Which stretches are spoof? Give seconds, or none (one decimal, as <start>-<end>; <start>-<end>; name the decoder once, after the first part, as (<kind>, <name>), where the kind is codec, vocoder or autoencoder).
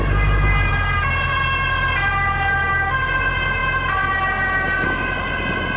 none